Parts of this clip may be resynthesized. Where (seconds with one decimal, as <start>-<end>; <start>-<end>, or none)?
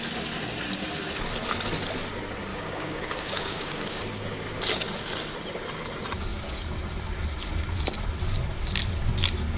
2.5-4.4